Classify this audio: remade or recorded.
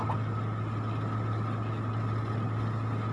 recorded